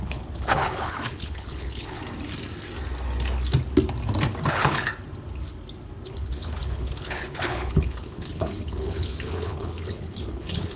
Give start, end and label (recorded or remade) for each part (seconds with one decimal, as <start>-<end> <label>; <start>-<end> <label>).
0.0-2.0 remade; 2.0-4.5 recorded; 4.5-4.9 remade; 4.9-6.1 recorded; 6.1-10.8 remade